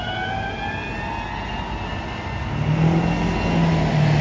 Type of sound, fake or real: real